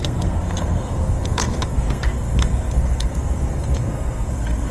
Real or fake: fake